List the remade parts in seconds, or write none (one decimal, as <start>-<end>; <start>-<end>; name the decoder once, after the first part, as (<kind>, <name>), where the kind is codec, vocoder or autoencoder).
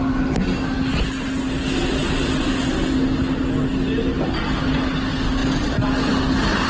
none